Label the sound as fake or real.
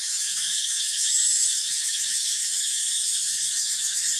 fake